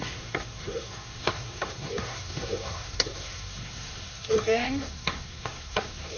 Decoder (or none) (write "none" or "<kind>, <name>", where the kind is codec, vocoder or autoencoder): codec, SNAC